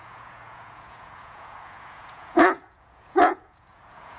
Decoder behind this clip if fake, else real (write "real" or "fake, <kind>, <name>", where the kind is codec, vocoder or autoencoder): fake, vocoder, Vocos